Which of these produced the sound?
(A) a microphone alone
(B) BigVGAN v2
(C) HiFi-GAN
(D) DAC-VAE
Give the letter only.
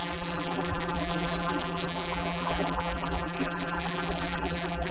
B